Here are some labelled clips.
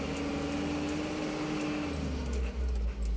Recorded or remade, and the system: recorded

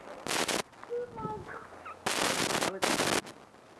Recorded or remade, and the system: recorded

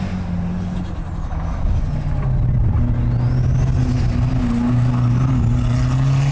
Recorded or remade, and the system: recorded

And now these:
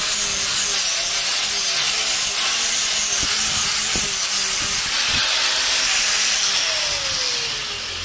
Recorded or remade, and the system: recorded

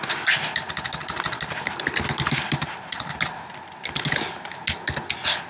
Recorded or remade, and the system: recorded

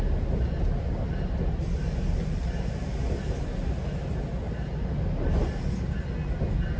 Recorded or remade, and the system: recorded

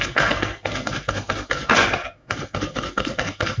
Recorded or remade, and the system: remade, codec, SNAC